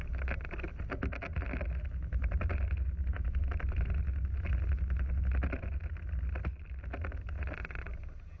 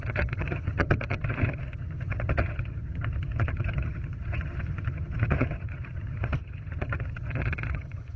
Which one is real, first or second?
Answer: first